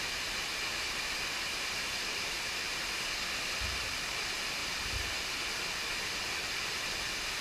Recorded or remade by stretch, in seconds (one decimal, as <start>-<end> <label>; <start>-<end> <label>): 0.0-7.4 recorded